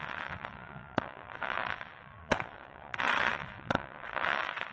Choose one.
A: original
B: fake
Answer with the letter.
B